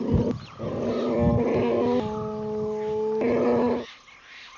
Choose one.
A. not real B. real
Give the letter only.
B